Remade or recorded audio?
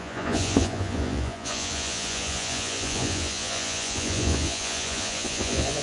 remade